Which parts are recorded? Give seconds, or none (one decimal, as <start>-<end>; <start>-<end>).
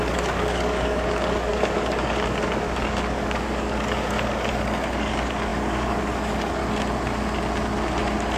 6.6-8.4